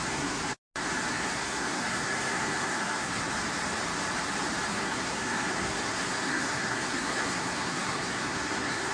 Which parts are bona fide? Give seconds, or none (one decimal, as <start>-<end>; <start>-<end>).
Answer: 0.4-1.1; 3.2-4.7